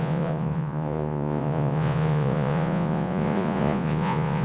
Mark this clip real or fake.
fake